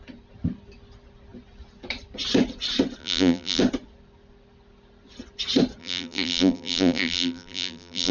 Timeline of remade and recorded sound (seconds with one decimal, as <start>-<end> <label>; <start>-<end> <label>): 0.0-3.0 recorded; 3.0-3.6 remade; 3.6-5.8 recorded; 5.8-8.1 remade